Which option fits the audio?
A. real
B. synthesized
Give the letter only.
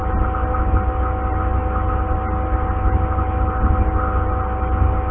A